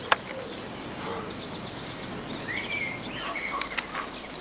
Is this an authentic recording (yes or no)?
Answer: yes